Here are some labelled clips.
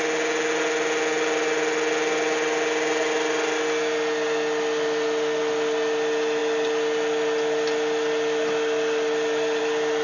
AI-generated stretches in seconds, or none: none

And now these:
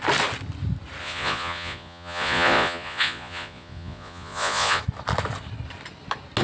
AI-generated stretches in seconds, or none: 1.0-4.8 (vocoder, Vocos)

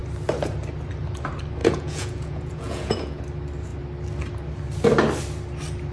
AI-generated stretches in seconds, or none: 1.6-3.2 (vocoder, Vocos)

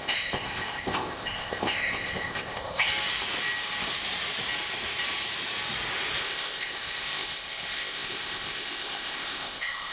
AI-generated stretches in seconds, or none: 0.0-2.9 (codec, ZipCodec); 6.2-9.9

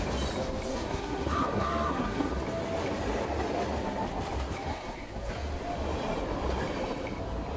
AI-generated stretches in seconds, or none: 0.7-2.3 (codec, SNAC); 4.7-5.3

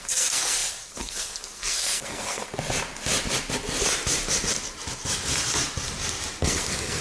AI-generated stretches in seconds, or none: 0.0-2.5 (codec, SNAC); 6.4-7.0